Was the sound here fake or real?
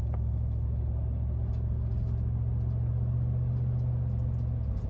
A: real